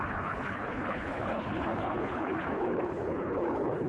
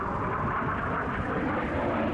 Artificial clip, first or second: first